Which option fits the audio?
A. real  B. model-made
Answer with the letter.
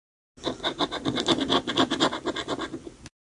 A